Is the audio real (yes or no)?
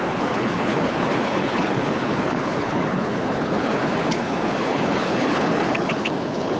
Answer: no